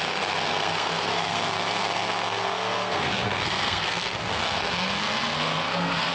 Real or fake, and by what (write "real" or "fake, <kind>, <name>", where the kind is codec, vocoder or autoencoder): fake, codec, SNAC